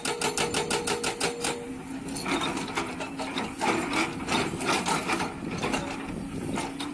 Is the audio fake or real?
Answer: real